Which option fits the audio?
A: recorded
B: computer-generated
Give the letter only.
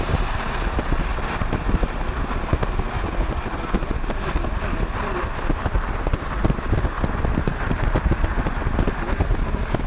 A